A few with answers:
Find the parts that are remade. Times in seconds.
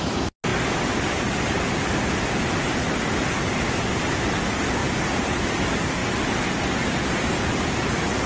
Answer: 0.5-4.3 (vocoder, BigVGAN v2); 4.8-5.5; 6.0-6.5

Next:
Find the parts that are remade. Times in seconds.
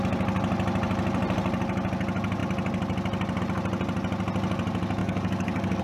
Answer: 5.0-5.8 (codec, DAC)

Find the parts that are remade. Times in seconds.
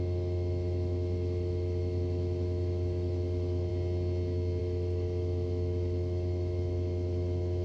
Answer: 0.0-3.7 (autoencoder, DAC-VAE); 4.6-7.6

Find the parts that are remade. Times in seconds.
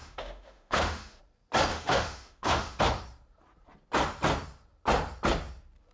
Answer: 0.0-1.2 (autoencoder, DAC-VAE); 1.7-2.8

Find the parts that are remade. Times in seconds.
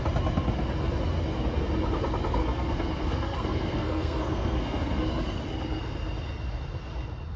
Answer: 2.4-5.1 (codec, SNAC)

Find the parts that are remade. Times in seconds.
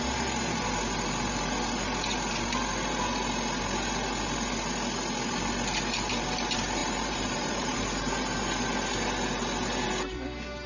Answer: 6.8-8.1 (vocoder, BigVGAN v2)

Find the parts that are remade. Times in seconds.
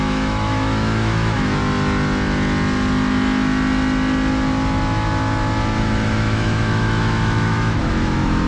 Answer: 0.0-1.6 (autoencoder, DAC-VAE); 5.8-8.5